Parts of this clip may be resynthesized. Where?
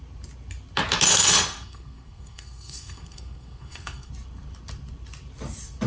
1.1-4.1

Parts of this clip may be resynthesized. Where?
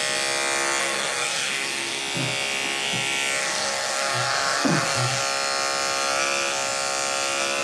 0.8-2.0; 3.4-5.2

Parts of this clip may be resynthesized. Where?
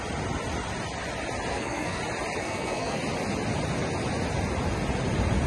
1.5-2.0; 2.4-3.0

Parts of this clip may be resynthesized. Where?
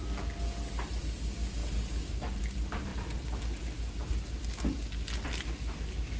none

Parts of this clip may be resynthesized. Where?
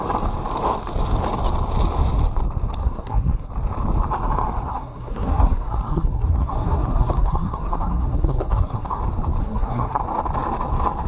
2.8-3.5; 4.7-9.0; 9.4-10.0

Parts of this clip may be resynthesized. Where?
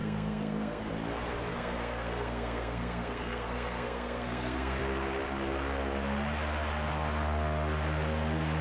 0.0-0.9; 1.5-4.8